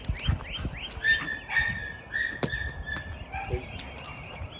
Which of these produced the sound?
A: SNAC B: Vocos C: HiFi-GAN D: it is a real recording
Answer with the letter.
D